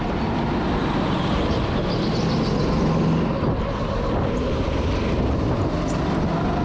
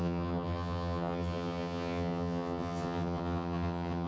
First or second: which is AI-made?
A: second